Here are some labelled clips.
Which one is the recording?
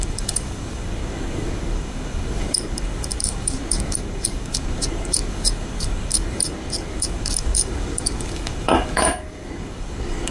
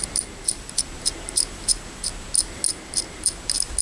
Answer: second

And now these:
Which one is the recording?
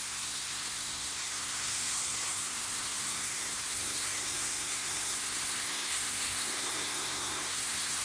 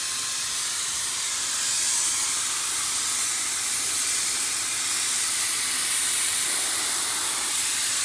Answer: second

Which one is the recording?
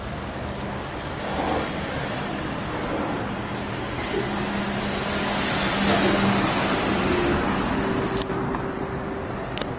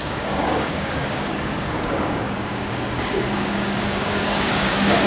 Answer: first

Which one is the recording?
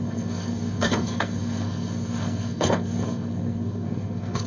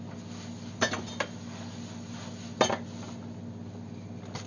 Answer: second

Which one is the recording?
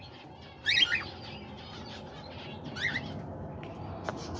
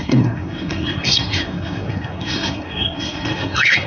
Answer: first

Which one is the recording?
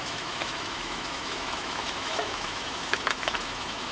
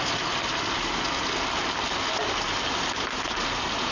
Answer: second